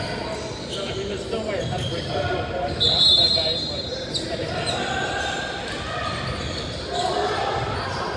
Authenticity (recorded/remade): recorded